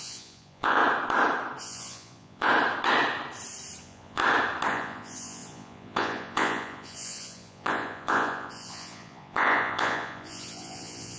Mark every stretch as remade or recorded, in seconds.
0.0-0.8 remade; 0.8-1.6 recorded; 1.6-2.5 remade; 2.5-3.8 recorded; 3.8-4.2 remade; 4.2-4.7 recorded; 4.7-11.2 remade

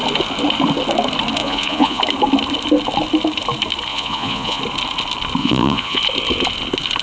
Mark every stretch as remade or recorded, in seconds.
0.0-1.4 recorded; 1.4-2.0 remade; 2.0-3.9 recorded; 3.9-4.6 remade; 4.6-5.4 recorded; 5.4-6.0 remade; 6.0-7.0 recorded

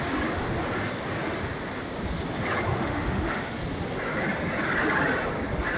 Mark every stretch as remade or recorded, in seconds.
0.0-2.7 recorded; 2.7-3.5 remade; 3.5-5.8 recorded

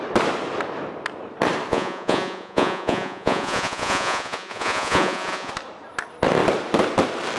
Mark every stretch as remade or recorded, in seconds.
0.0-1.7 recorded; 1.7-5.5 remade; 5.5-7.4 recorded

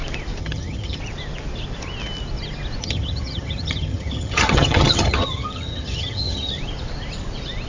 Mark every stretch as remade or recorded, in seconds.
0.0-0.4 recorded; 0.4-1.0 remade; 1.0-2.8 recorded; 2.8-6.6 remade; 6.6-7.7 recorded

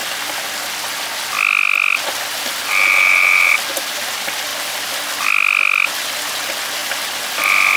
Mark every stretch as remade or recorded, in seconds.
0.0-7.8 recorded